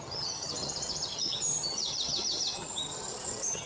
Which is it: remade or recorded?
remade